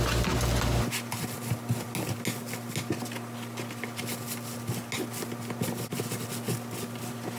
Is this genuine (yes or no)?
yes